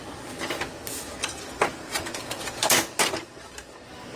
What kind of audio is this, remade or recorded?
recorded